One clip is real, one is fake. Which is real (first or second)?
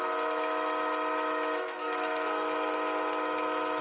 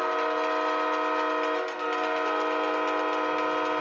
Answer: second